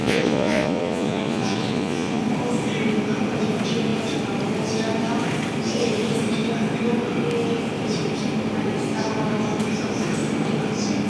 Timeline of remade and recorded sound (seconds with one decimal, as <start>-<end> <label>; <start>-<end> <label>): 0.0-2.2 remade; 2.2-11.1 recorded